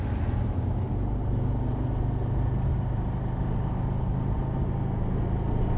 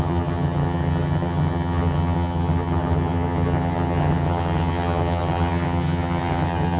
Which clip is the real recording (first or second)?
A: first